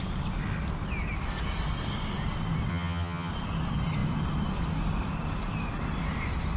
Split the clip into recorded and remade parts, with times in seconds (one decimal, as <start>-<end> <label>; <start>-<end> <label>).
0.0-2.7 recorded; 2.7-3.3 remade; 3.3-6.6 recorded